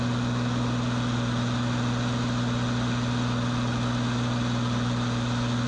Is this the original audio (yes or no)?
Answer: yes